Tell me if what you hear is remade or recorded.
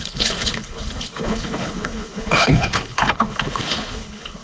remade